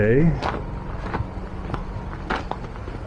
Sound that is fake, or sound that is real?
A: real